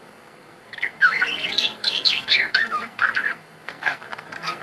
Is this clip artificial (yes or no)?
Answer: yes